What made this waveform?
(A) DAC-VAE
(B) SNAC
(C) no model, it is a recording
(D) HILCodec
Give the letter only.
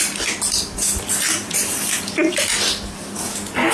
C